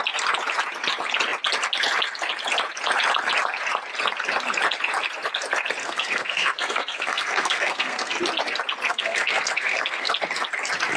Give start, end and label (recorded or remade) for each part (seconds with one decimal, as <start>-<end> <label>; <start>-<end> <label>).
0.0-5.8 recorded; 5.8-8.2 remade; 8.2-8.9 recorded; 8.9-10.1 remade; 10.1-11.0 recorded